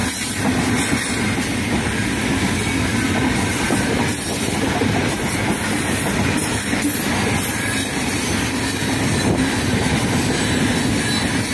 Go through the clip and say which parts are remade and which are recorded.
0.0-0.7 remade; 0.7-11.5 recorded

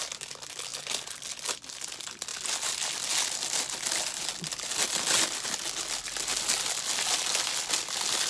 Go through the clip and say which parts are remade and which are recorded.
0.0-8.3 recorded

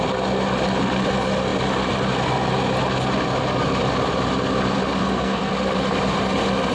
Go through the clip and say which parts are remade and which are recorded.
0.0-5.0 recorded; 5.0-5.5 remade; 5.5-6.7 recorded

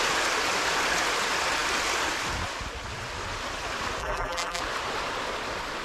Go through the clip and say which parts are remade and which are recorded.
0.0-4.0 recorded; 4.0-4.6 remade; 4.6-5.8 recorded

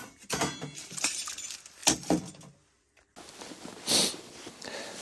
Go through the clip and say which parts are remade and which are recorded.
0.0-0.8 recorded; 0.8-1.3 remade; 1.3-5.0 recorded